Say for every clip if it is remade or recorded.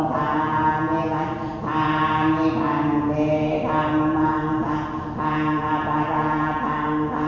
recorded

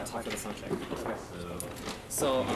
recorded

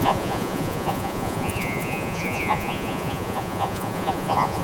remade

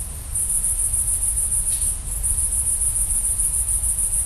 remade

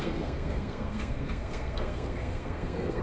remade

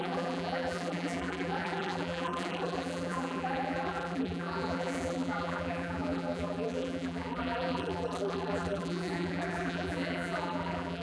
remade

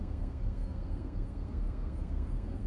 remade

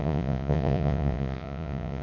remade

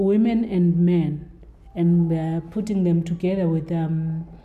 recorded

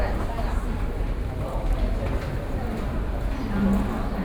recorded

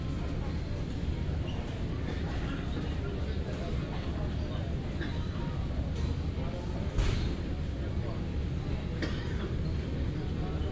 recorded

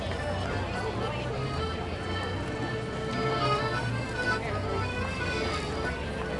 recorded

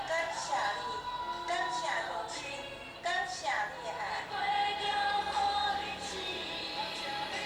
recorded